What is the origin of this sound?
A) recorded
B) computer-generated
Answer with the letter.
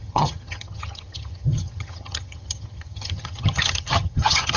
B